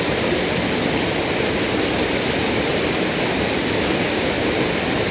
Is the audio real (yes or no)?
yes